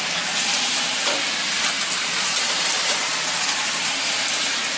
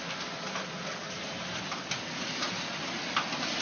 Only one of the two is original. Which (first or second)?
second